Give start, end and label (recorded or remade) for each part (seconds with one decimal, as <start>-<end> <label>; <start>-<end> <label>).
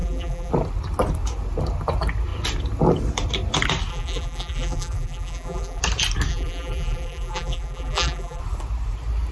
0.0-0.5 remade; 0.5-3.9 recorded; 3.9-5.8 remade; 5.8-6.3 recorded; 6.3-8.4 remade; 8.4-9.3 recorded